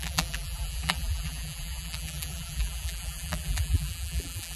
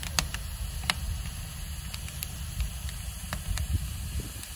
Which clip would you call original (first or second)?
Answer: second